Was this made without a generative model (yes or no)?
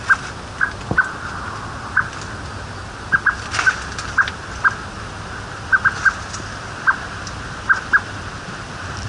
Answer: yes